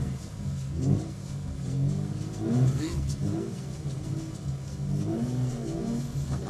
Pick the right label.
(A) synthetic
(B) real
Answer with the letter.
A